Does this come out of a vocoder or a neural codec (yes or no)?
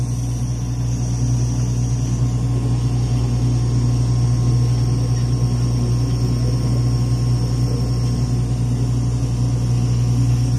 no